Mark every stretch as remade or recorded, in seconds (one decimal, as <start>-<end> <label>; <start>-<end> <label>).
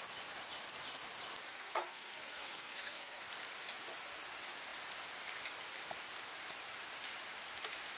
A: 0.0-1.5 recorded; 1.5-3.2 remade; 3.2-8.0 recorded